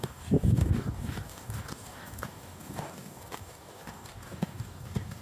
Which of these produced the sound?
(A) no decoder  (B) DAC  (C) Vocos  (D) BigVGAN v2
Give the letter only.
B